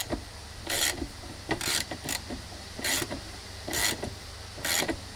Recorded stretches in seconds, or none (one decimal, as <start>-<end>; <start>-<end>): 3.8-4.8